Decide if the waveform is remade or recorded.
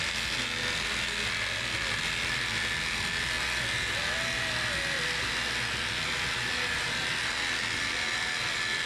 recorded